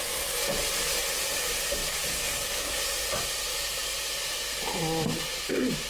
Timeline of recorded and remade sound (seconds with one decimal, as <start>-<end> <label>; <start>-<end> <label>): 0.0-1.8 recorded; 1.8-2.8 remade; 2.8-5.9 recorded